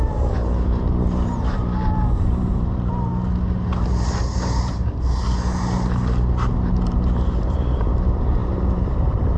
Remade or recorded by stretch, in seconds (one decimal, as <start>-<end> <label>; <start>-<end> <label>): 0.0-3.1 remade; 3.1-7.4 recorded; 7.4-9.4 remade